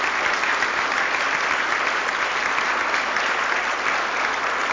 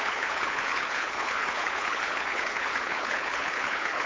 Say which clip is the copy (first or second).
second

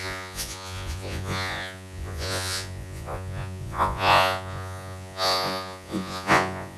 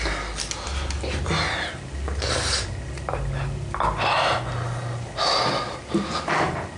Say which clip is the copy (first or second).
first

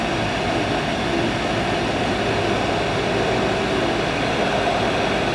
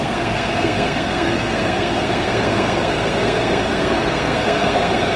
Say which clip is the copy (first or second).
second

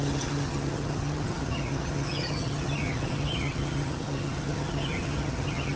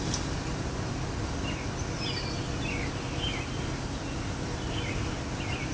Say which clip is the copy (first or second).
first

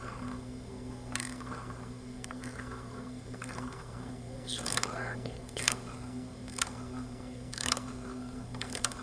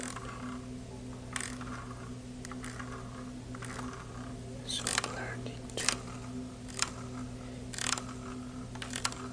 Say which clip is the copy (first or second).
first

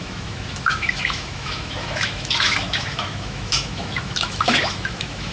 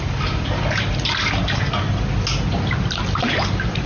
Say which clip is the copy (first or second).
first